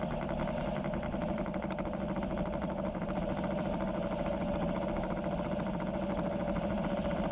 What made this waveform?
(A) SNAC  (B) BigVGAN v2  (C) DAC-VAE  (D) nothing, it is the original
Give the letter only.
D